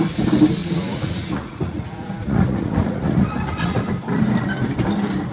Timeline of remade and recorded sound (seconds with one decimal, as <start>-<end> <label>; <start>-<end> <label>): 0.0-0.6 recorded; 0.6-3.8 remade; 3.8-5.3 recorded